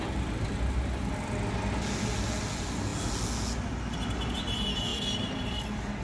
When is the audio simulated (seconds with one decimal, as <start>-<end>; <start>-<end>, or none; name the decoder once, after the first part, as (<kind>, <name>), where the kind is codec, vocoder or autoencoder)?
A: none